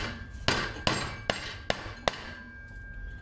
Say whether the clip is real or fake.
real